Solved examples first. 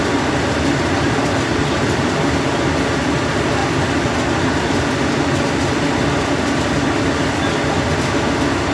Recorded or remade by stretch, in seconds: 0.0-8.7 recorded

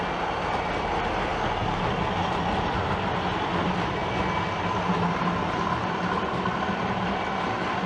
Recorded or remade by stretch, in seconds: 0.0-7.9 recorded

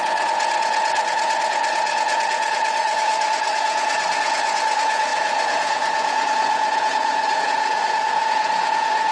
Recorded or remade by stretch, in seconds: 0.0-9.1 remade

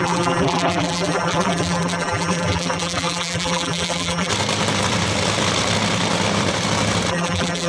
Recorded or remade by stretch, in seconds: 0.0-4.3 remade; 4.3-7.1 recorded; 7.1-7.7 remade

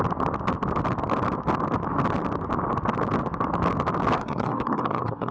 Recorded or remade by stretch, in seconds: 0.0-4.2 recorded; 4.2-5.3 remade

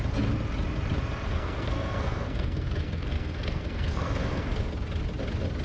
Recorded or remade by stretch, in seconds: 0.0-1.3 recorded; 1.3-4.7 remade; 4.7-5.6 recorded

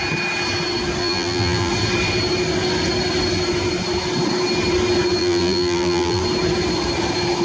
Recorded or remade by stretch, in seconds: 0.0-1.0 recorded; 1.0-1.7 remade; 1.7-5.2 recorded; 5.2-6.2 remade; 6.2-7.4 recorded